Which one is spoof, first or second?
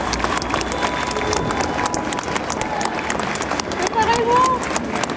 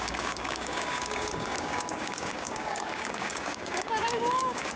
second